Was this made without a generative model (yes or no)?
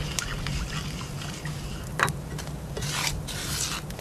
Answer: yes